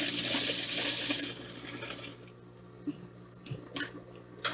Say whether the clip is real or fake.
real